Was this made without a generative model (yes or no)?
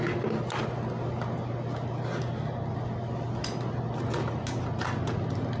yes